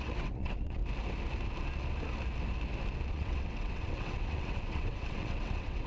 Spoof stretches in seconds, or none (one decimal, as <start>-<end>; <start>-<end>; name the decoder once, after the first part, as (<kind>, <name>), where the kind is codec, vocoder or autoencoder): 0.0-0.8 (vocoder, WaveNeXt); 3.1-5.9